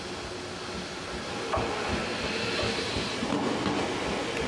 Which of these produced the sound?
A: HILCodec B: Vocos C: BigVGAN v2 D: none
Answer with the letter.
D